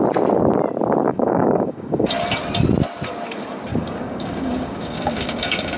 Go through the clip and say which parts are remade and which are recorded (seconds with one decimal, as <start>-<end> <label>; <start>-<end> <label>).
0.0-1.1 recorded; 1.1-2.1 remade; 2.1-3.7 recorded; 3.7-5.8 remade

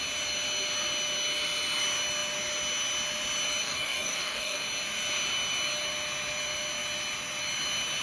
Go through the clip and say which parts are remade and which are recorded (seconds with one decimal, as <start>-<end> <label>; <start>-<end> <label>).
0.0-3.6 recorded; 3.6-4.6 remade; 4.6-8.0 recorded

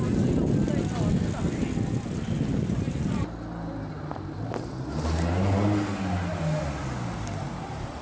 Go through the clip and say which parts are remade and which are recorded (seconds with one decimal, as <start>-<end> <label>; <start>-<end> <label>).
0.0-8.0 recorded

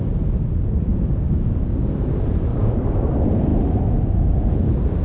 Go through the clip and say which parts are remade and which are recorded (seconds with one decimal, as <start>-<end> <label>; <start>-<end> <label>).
0.0-0.9 recorded; 0.9-1.9 remade; 1.9-2.5 recorded; 2.5-3.1 remade; 3.1-5.0 recorded